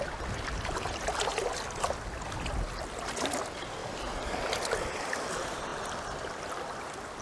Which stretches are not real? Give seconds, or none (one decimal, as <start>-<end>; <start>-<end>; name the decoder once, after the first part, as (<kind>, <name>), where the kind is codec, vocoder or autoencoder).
0.0-1.3 (vocoder, BigVGAN v2); 3.0-3.8; 5.2-5.7